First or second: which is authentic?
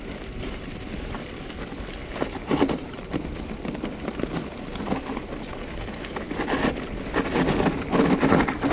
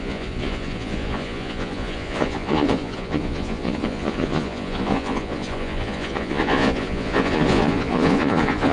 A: first